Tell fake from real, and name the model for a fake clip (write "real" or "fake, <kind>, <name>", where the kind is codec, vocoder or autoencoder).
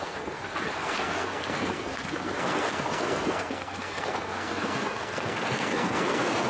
fake, codec, SNAC